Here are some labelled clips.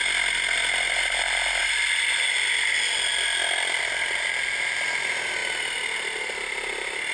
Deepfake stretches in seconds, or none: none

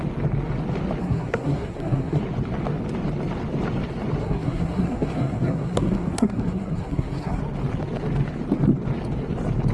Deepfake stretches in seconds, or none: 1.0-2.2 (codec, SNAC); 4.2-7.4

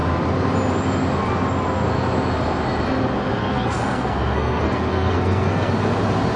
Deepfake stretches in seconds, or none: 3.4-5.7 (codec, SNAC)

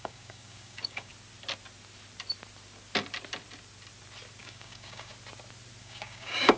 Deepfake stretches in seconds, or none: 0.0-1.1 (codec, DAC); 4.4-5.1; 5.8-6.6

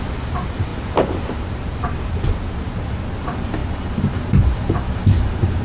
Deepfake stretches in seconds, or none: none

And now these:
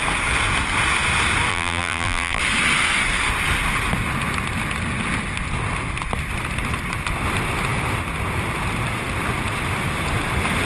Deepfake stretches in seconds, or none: 1.5-2.4 (vocoder, BigVGAN v2)